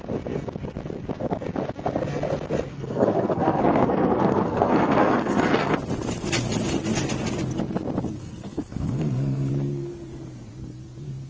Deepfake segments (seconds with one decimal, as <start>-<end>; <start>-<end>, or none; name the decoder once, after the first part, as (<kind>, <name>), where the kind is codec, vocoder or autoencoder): 2.7-5.7 (codec, SNAC); 8.2-9.5